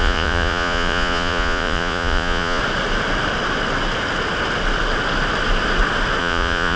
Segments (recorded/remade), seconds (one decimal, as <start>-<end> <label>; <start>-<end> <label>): 0.0-2.6 remade; 2.6-6.2 recorded; 6.2-6.8 remade